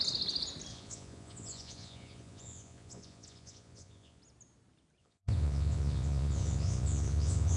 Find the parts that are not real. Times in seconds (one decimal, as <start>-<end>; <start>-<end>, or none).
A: 0.7-4.2; 5.0-7.6